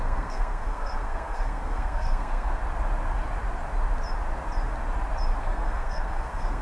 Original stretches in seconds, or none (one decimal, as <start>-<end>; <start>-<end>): 2.6-5.4